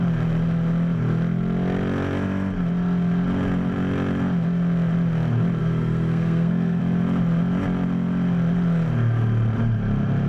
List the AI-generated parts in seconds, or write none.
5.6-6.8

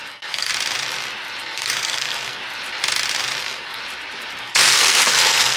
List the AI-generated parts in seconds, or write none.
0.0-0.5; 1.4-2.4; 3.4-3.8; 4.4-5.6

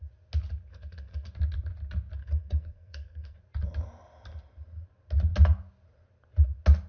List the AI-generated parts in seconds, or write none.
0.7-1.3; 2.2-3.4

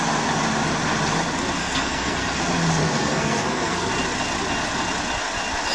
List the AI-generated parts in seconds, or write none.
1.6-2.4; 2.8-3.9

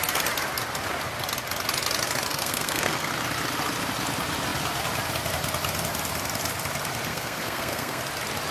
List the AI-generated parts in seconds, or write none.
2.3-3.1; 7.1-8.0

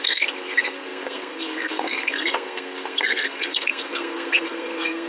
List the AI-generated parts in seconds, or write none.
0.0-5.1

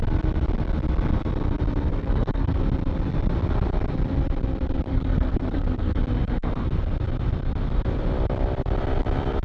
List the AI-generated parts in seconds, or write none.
1.9-2.6; 4.9-6.0